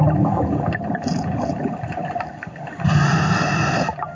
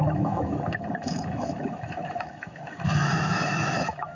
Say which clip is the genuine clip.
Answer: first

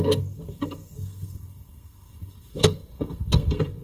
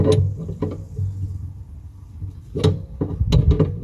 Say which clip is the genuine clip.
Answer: second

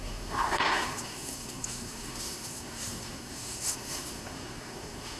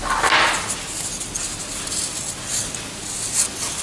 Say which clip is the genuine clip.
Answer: second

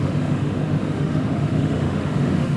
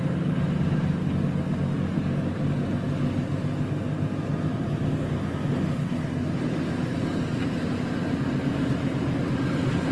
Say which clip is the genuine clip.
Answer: second